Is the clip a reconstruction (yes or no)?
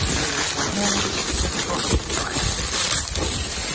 no